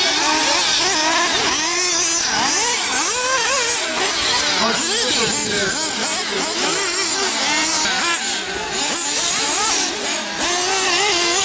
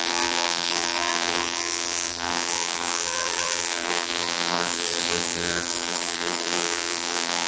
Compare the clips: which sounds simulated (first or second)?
second